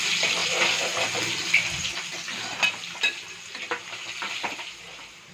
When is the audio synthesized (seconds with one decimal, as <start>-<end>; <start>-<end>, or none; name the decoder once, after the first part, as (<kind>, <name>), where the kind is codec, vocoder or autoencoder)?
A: none